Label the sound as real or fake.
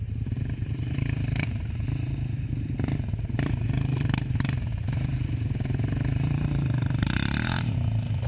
fake